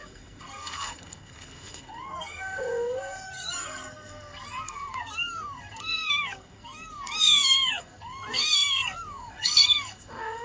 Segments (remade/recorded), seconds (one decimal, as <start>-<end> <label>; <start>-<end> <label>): 0.0-10.4 remade